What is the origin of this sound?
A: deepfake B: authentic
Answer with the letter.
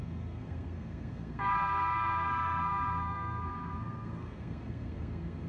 A